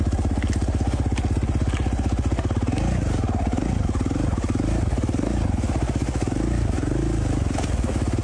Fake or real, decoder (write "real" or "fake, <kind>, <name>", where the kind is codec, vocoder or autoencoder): real